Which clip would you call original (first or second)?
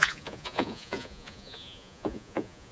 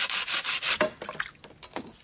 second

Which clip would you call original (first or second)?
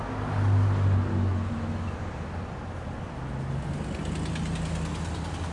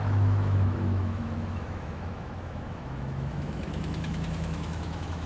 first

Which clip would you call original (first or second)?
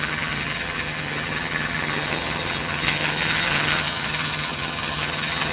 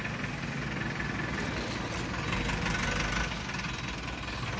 second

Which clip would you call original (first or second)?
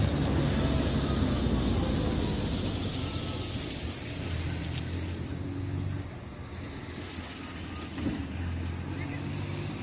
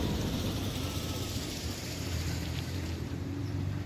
first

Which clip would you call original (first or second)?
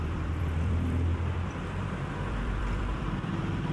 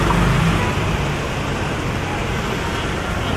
second